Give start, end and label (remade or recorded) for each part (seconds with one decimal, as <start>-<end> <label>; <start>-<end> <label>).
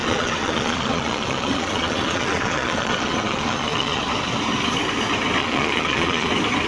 0.0-4.0 remade; 4.0-5.4 recorded; 5.4-6.3 remade; 6.3-6.7 recorded